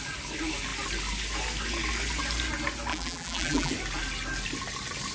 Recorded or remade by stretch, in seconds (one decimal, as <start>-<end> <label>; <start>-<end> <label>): 0.0-2.9 recorded; 2.9-3.7 remade; 3.7-5.1 recorded

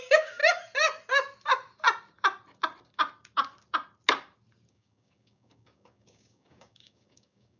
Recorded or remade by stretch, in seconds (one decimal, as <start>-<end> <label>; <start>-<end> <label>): 0.0-0.4 remade; 0.4-4.7 recorded; 4.7-7.6 remade

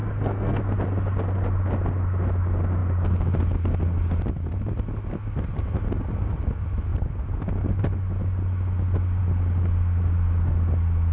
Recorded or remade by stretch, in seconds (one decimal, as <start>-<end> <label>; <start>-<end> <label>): 0.0-0.6 remade; 0.6-11.1 recorded

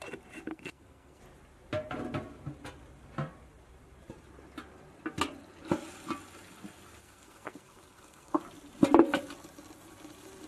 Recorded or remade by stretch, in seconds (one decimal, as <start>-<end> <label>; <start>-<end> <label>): 0.0-0.5 recorded; 0.5-1.2 remade; 1.2-7.0 recorded; 7.0-8.4 remade; 8.4-10.5 recorded

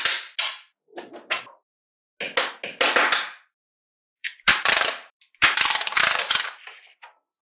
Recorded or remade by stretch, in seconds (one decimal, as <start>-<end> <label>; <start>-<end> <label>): 0.0-4.2 recorded; 4.2-6.3 remade; 6.3-7.4 recorded

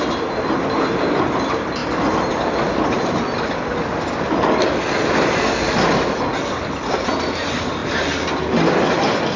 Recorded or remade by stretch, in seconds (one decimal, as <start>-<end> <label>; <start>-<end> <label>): 0.0-9.4 recorded

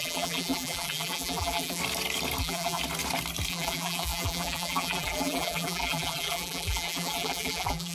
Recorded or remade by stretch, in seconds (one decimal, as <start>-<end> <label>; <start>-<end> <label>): 0.0-1.8 remade; 1.8-2.4 recorded; 2.4-2.8 remade; 2.8-3.5 recorded; 3.5-7.9 remade

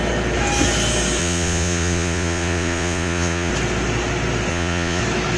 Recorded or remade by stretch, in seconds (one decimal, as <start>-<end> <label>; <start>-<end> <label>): 0.0-1.2 recorded; 1.2-3.5 remade; 3.5-4.5 recorded; 4.5-5.0 remade; 5.0-5.4 recorded